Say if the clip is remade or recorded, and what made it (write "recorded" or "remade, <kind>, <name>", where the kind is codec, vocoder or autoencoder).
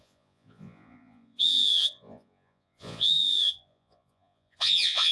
remade, vocoder, Vocos